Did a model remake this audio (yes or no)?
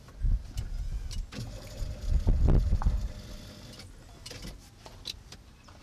no